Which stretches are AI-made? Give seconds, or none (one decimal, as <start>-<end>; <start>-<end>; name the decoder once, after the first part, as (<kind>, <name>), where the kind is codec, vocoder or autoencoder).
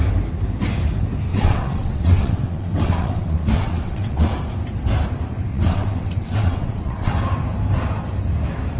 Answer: 1.3-4.3 (vocoder, WaveNeXt); 5.5-7.1